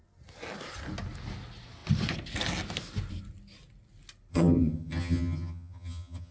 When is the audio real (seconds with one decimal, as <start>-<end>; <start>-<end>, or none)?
0.0-4.3